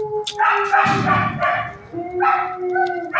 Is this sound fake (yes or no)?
no